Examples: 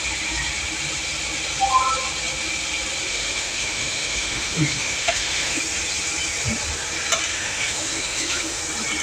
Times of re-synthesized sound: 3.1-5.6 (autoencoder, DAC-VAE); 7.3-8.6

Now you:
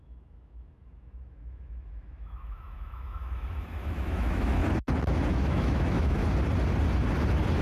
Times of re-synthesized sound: 0.0-4.6 (autoencoder, DAC-VAE); 5.3-6.2

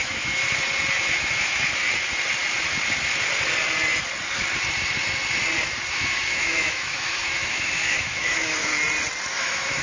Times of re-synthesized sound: 0.0-0.4 (autoencoder, DAC-VAE); 1.0-1.8; 5.9-8.7; 9.3-9.8

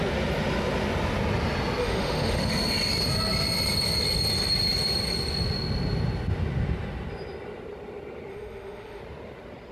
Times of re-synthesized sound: 1.8-2.5 (autoencoder, DAC-VAE); 8.3-9.0

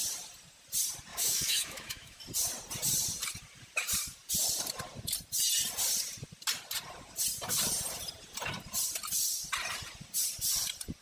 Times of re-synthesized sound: 1.1-2.2 (autoencoder, DAC-VAE)

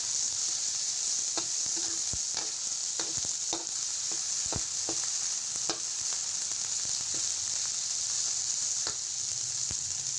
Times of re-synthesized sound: none

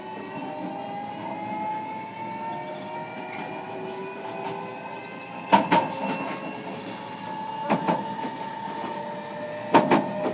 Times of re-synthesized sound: none

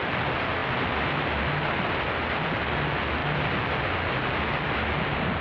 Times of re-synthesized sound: none